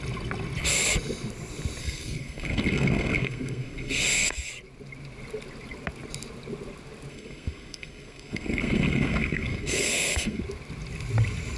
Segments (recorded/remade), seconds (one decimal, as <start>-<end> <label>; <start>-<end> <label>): 0.0-1.8 recorded; 1.8-4.5 remade; 4.5-7.1 recorded; 7.1-10.4 remade; 10.4-11.6 recorded